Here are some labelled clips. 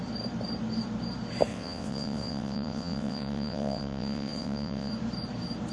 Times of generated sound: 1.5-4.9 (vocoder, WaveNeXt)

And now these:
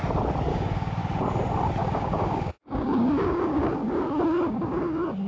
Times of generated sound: 0.5-1.0 (codec, DAC); 1.8-5.3

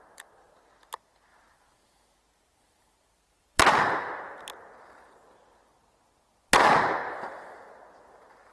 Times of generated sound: 1.3-3.7 (vocoder, BigVGAN v2)

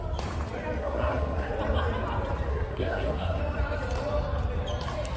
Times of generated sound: 0.8-1.5 (codec, SNAC); 2.5-3.4